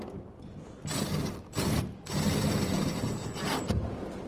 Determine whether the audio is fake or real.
real